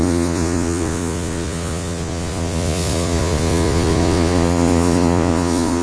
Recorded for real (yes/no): no